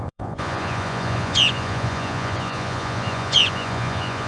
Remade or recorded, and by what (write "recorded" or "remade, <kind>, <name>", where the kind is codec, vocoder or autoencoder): remade, vocoder, Vocos